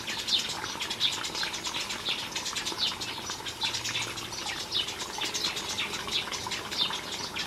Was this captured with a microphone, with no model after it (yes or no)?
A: yes